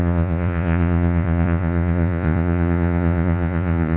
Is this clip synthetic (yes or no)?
yes